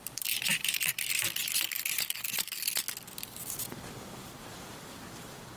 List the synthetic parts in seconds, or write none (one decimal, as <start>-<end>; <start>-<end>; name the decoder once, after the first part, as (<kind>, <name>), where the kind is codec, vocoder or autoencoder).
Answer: 0.0-5.6 (vocoder, BigVGAN v2)